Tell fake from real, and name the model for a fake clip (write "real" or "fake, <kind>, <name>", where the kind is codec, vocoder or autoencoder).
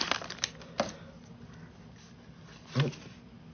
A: real